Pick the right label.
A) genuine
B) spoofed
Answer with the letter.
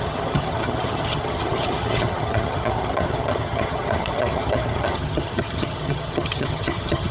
B